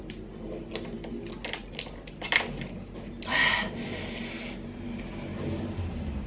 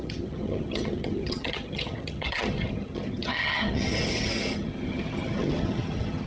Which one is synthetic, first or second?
second